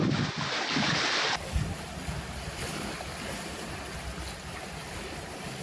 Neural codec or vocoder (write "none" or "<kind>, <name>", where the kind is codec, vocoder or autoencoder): none